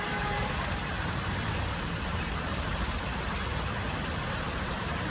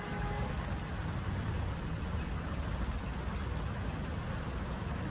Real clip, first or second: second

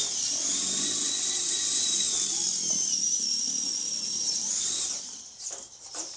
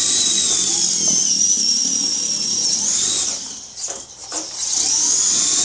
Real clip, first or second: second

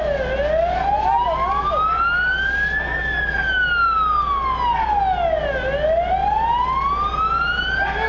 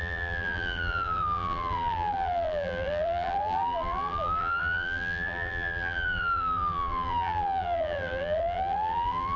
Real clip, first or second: first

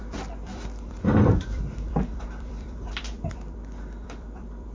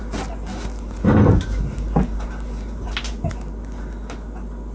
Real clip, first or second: second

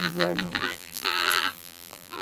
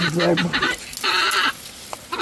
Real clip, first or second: second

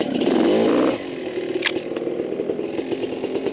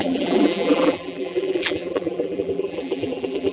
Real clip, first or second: first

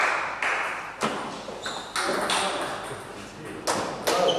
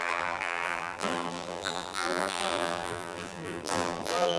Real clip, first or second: first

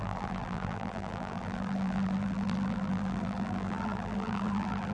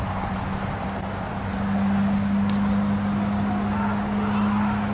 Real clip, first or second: second